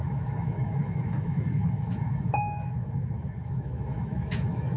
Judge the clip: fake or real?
fake